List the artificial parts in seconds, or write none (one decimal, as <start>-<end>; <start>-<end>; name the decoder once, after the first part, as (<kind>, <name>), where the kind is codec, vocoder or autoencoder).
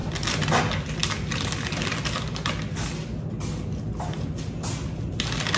none